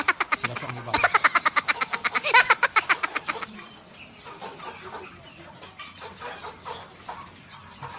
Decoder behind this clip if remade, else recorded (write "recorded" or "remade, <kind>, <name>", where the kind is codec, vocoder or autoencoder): remade, vocoder, BigVGAN v2